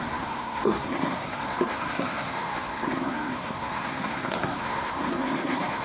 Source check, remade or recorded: remade